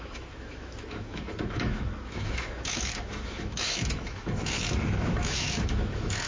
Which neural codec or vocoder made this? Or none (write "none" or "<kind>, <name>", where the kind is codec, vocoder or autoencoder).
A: autoencoder, DAC-VAE